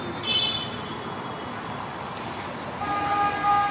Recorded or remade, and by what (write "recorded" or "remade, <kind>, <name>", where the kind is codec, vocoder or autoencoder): recorded